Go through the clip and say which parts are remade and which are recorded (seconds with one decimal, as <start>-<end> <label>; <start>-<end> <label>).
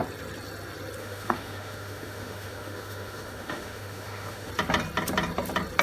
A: 0.0-1.0 recorded; 1.0-4.5 remade; 4.5-5.8 recorded